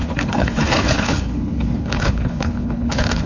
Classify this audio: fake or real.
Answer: fake